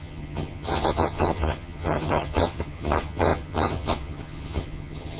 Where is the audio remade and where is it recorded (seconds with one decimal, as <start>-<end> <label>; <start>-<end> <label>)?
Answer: 0.0-5.2 remade